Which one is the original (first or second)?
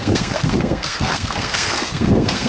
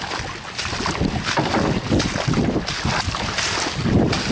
second